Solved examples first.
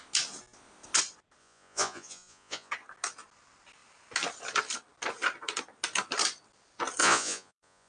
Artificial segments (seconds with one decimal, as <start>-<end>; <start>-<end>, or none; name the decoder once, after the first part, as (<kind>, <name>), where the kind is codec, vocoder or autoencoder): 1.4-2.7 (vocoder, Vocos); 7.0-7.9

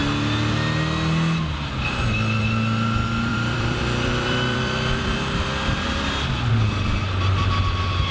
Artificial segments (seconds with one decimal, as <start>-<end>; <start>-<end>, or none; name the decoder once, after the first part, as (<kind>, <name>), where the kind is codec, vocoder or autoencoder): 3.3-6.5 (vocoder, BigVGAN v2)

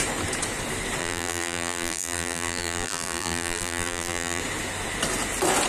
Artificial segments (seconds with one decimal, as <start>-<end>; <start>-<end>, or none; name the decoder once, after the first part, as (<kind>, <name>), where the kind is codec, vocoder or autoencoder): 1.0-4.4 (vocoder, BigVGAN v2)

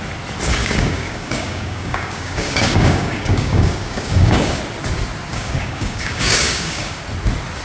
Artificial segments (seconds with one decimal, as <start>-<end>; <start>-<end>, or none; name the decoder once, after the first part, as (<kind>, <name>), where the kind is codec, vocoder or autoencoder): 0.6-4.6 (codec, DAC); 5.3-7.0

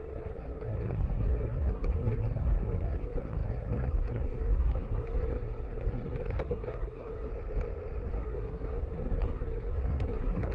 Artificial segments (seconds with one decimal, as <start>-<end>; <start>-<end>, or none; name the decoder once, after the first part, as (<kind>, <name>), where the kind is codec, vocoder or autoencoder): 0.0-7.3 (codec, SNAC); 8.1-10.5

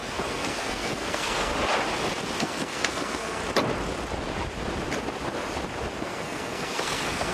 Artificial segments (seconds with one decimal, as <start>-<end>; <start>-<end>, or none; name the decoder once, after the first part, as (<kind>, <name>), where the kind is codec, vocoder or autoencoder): 0.0-1.5 (codec, SNAC); 2.4-3.4; 6.0-7.3

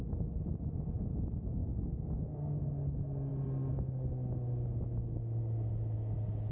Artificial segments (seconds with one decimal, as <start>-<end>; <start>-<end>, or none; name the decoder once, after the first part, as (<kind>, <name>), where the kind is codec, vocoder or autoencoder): 1.6-2.6 (codec, SNAC)

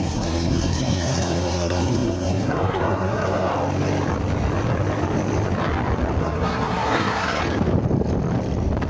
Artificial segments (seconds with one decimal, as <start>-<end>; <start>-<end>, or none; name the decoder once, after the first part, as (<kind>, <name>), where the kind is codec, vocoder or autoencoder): 0.0-3.5 (codec, SNAC); 6.2-7.4